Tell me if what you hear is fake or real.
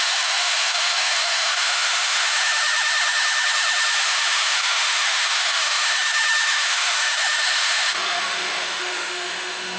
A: fake